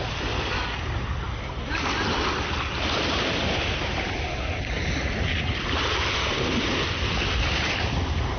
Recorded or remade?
recorded